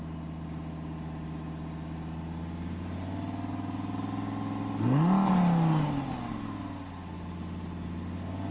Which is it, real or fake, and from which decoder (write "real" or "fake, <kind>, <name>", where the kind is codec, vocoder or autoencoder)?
real